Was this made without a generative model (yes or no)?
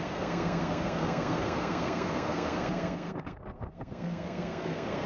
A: no